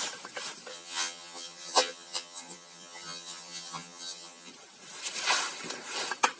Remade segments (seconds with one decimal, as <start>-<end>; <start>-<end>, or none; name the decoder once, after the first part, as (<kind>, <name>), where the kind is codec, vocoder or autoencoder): 0.7-4.5 (vocoder, HiFi-GAN)